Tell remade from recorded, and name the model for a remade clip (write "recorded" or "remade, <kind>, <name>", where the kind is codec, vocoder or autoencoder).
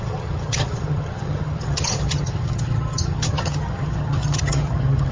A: remade, vocoder, HiFi-GAN